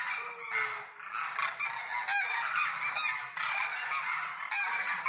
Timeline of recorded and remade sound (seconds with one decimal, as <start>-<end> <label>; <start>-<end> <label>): 0.0-5.1 recorded